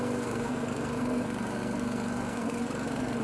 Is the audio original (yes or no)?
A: no